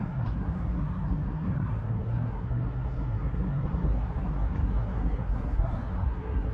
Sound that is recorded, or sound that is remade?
remade